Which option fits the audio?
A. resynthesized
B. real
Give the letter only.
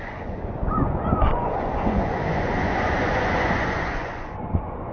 A